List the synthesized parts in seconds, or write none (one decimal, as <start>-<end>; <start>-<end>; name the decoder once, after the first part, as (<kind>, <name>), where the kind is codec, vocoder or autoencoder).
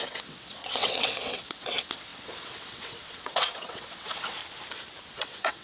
0.0-4.4 (vocoder, WaveNeXt); 5.1-5.6